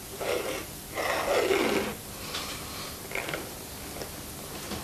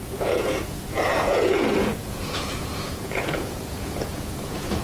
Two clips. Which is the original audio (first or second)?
first